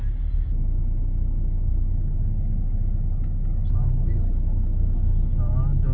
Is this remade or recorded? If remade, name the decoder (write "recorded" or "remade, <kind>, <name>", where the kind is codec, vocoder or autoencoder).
recorded